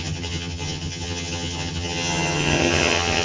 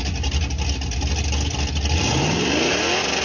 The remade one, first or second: first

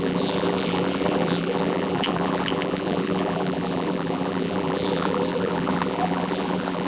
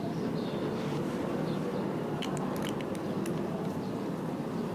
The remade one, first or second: first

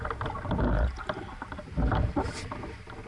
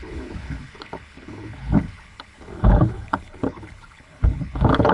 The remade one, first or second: second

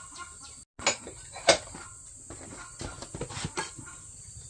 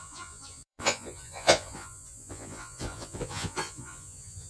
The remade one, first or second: second